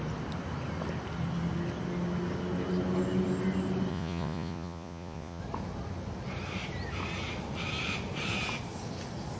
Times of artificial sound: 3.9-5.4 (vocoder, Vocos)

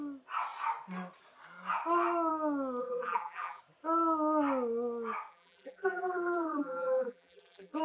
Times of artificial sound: 2.8-3.6 (vocoder, BigVGAN v2); 5.3-7.8

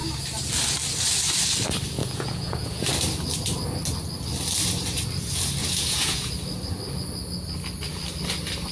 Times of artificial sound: 2.0-2.9 (vocoder, Vocos); 5.6-6.3

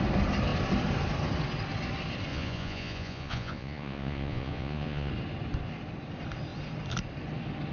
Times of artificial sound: 2.3-5.1 (vocoder, Vocos)

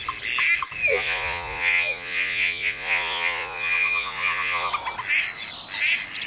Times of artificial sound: 0.9-4.7 (vocoder, Vocos)

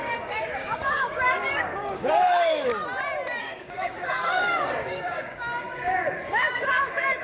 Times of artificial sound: 0.0-2.7 (codec, DAC); 3.4-7.2

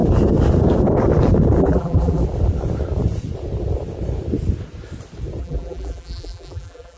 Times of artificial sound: 1.6-2.2 (vocoder, BigVGAN v2); 5.4-7.0

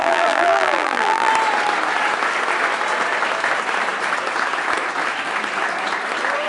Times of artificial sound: 0.0-1.3 (vocoder, BigVGAN v2)